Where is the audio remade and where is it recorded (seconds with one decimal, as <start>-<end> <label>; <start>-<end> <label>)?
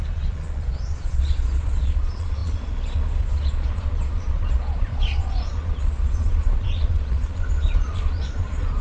0.0-8.8 remade